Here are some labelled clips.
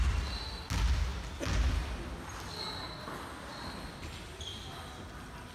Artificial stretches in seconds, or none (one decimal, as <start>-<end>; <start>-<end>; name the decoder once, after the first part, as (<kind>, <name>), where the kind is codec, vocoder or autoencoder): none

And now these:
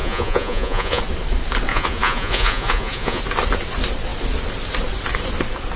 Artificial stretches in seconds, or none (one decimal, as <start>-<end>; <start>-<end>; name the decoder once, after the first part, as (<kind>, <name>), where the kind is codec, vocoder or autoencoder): 0.0-1.0 (vocoder, Vocos); 1.7-3.2

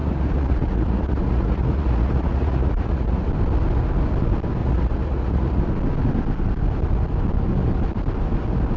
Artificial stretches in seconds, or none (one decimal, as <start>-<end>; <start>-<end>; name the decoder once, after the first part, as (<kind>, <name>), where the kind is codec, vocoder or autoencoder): 0.0-3.3 (vocoder, Vocos); 4.6-5.6

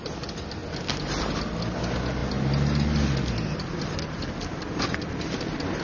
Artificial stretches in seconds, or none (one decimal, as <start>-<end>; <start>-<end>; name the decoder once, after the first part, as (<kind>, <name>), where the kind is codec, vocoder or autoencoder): none

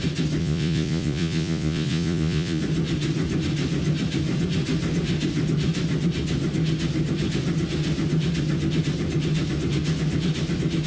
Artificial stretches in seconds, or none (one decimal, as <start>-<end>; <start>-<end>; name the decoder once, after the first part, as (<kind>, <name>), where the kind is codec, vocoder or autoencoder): 0.4-2.6 (vocoder, Vocos)

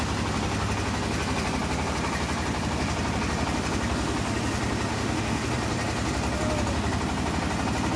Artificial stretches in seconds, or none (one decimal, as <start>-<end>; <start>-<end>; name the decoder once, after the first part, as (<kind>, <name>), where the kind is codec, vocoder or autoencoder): 4.9-5.4 (autoencoder, DAC-VAE)

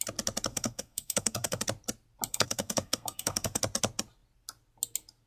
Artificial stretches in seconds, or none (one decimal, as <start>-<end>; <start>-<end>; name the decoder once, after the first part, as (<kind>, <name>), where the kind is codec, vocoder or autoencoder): 0.5-1.6 (codec, SNAC); 2.3-3.6